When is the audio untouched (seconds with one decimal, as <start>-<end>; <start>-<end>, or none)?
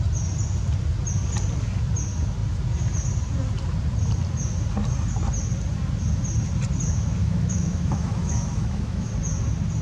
0.0-7.2; 9.1-9.8